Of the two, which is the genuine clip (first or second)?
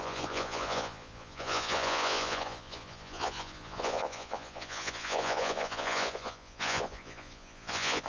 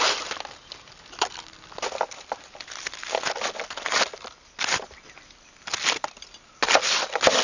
second